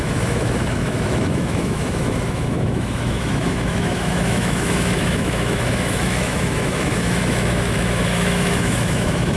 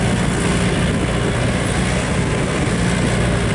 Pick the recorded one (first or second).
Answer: second